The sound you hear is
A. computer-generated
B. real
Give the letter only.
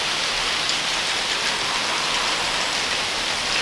B